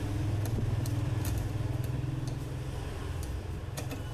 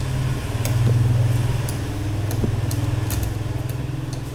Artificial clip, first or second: first